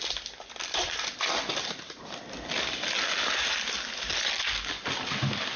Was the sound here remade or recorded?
recorded